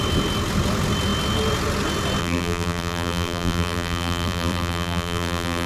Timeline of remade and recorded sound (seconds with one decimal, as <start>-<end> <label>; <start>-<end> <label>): 0.0-2.2 recorded; 2.2-5.7 remade